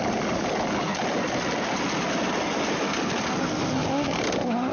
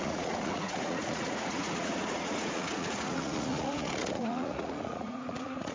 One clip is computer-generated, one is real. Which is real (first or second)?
first